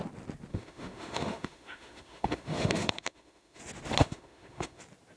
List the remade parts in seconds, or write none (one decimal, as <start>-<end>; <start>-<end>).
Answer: 0.5-3.6; 4.0-4.8